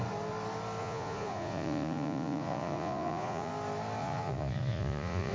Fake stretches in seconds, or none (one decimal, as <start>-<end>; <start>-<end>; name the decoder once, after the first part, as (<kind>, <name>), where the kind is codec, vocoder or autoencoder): 0.8-3.5 (vocoder, Vocos); 4.0-5.3